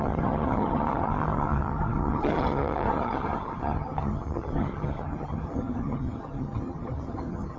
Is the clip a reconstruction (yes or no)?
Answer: yes